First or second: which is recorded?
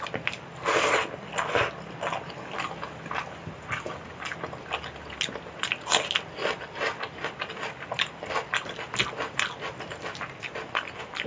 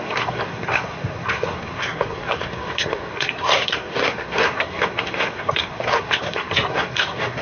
first